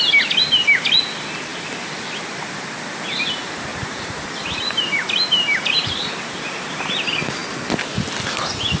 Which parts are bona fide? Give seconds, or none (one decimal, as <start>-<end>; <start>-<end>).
0.0-1.5; 2.7-3.7; 6.7-8.8